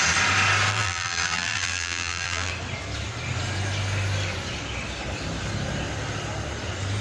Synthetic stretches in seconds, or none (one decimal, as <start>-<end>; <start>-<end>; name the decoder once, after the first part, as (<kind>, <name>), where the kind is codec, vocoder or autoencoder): 0.7-2.5 (vocoder, BigVGAN v2)